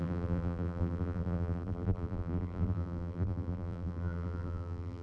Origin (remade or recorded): remade